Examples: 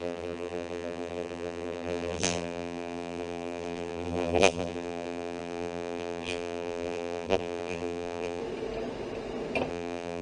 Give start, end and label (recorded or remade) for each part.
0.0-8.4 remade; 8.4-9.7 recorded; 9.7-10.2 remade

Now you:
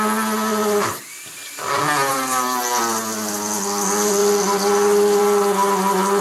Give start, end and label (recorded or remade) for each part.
0.0-0.5 recorded; 0.5-1.6 remade; 1.6-2.1 recorded; 2.1-3.0 remade; 3.0-4.2 recorded; 4.2-5.2 remade; 5.2-6.2 recorded

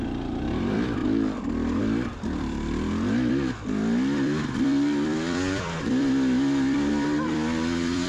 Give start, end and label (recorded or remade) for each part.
0.0-1.0 remade; 1.0-1.8 recorded; 1.8-8.1 remade

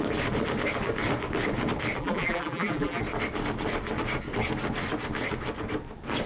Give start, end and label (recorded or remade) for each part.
0.0-2.0 recorded; 2.0-3.0 remade; 3.0-6.3 recorded

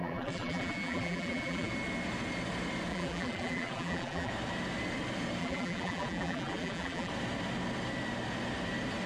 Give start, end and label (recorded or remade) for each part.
0.0-1.7 remade; 1.7-2.9 recorded; 2.9-4.3 remade; 4.3-5.4 recorded; 5.4-7.1 remade; 7.1-9.1 recorded